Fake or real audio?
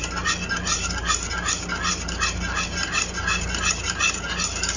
real